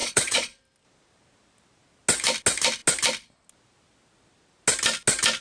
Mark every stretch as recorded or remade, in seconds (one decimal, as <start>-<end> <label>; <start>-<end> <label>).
0.0-0.6 remade; 0.6-5.4 recorded